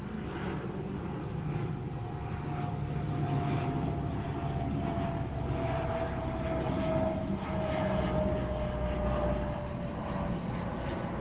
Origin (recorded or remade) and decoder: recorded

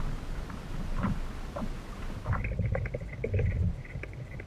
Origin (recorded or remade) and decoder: recorded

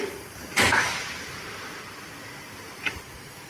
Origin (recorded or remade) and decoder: recorded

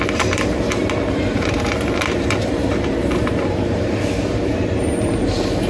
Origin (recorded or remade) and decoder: remade, vocoder, BigVGAN v2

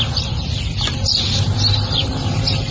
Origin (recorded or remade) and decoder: recorded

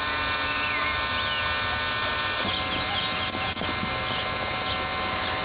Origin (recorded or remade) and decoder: recorded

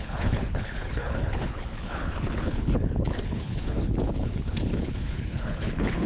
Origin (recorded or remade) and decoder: remade, codec, HILCodec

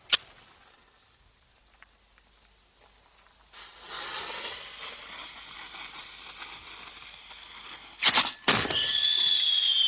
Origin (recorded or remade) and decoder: recorded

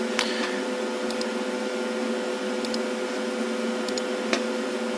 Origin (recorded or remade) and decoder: recorded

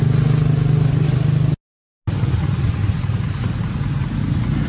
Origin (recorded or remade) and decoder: recorded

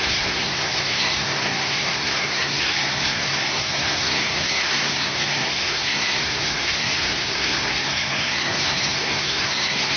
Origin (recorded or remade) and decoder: remade, codec, SNAC